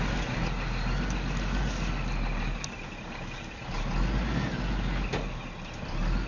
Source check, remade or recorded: recorded